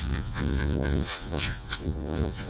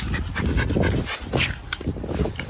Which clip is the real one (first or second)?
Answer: second